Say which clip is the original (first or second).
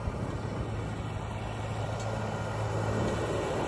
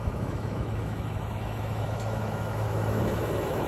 first